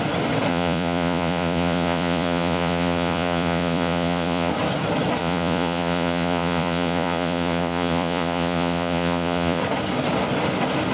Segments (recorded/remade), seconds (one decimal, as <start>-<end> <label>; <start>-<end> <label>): 0.0-0.5 recorded; 0.5-4.5 remade; 4.5-5.2 recorded; 5.2-9.6 remade; 9.6-10.9 recorded